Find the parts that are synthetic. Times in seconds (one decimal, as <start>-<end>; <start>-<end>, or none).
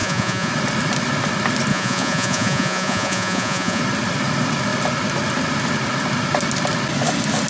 0.0-0.5; 1.7-3.8